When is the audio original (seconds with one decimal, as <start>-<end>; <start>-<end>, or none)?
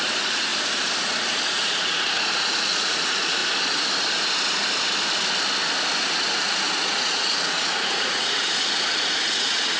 0.5-1.5; 3.4-6.4